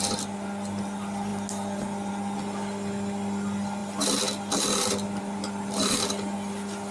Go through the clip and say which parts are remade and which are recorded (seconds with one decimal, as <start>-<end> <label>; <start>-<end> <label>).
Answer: 0.0-6.9 recorded

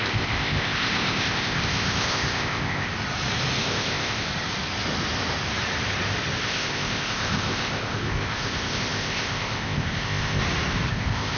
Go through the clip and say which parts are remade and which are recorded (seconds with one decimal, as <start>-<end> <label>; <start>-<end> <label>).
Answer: 0.0-2.9 remade; 2.9-3.6 recorded; 3.6-4.3 remade; 4.3-6.4 recorded; 6.4-10.4 remade; 10.4-10.9 recorded; 10.9-11.4 remade

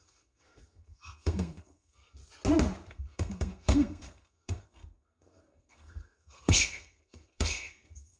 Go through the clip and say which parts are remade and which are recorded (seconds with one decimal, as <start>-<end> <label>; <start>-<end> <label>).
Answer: 0.0-2.2 remade; 2.2-2.9 recorded; 2.9-8.2 remade

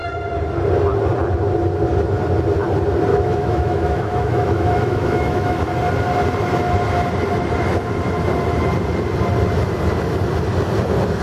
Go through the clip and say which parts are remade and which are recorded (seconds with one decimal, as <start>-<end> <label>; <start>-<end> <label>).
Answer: 0.0-3.1 recorded; 3.1-5.6 remade; 5.6-11.2 recorded

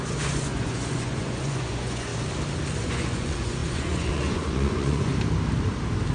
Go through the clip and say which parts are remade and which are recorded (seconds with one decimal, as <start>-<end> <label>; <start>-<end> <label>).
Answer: 0.0-2.1 remade; 2.1-2.8 recorded; 2.8-5.1 remade; 5.1-6.1 recorded